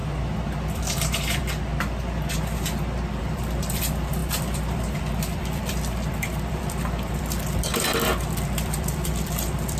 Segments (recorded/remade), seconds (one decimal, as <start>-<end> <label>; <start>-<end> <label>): 0.0-0.7 recorded; 0.7-1.7 remade; 1.7-3.2 recorded; 3.2-9.8 remade